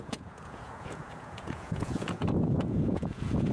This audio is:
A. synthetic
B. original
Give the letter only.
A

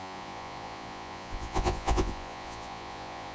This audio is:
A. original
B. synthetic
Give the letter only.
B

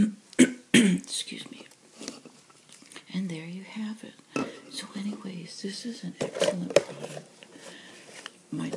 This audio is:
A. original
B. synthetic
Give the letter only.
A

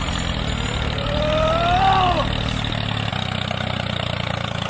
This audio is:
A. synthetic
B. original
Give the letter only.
B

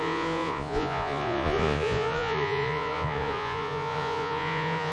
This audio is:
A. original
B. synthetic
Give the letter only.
B